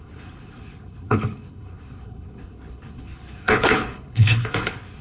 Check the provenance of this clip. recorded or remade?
remade